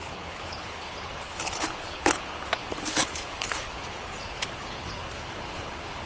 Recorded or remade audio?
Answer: remade